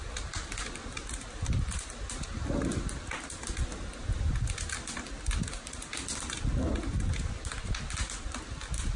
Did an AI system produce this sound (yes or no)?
no